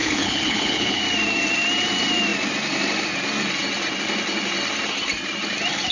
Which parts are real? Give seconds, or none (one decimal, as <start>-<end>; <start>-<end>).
1.0-5.9